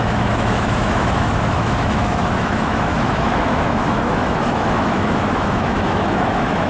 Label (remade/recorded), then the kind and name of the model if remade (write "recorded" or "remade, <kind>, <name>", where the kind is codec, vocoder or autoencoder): remade, autoencoder, DAC-VAE